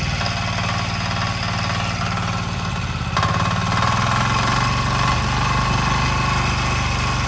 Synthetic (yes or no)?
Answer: no